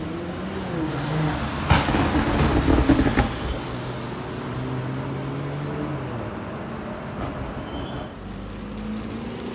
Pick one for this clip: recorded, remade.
recorded